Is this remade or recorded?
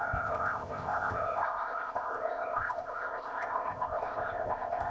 remade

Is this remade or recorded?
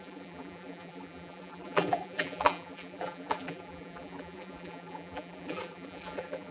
remade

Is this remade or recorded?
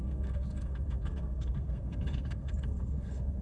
remade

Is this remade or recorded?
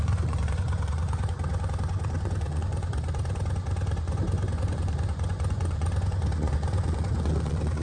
remade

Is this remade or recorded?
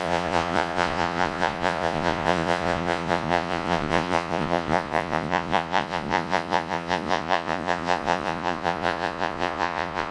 remade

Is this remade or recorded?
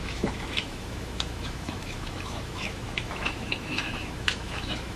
remade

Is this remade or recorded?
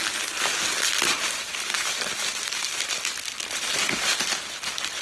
recorded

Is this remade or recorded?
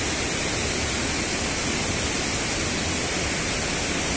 recorded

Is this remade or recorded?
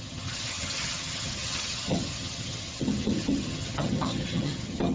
remade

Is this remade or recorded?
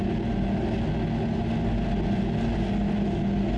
recorded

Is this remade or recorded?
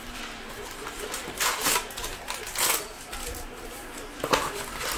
recorded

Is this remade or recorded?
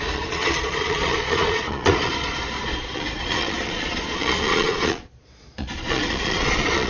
remade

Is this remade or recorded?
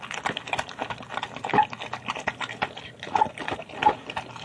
recorded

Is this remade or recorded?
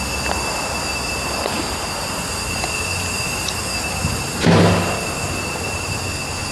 recorded